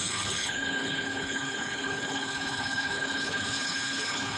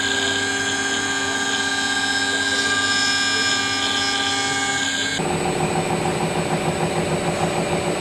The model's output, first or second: first